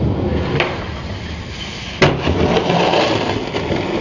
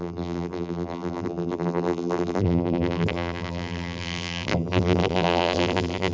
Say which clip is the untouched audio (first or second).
first